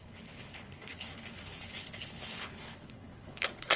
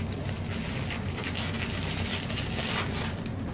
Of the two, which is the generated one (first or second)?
first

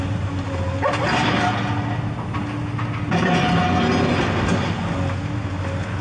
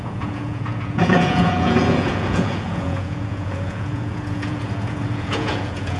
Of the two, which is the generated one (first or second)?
second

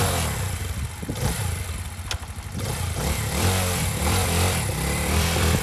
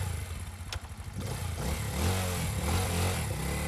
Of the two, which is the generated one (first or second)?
first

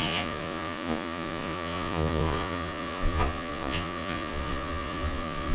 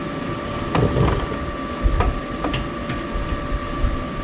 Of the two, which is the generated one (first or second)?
first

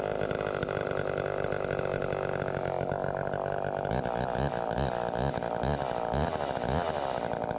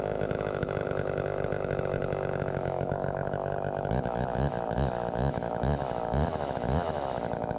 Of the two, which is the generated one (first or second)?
second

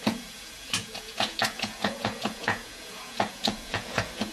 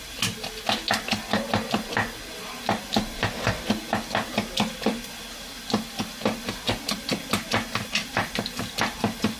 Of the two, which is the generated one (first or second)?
first